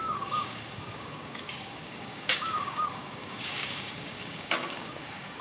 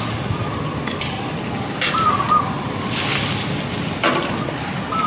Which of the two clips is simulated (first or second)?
first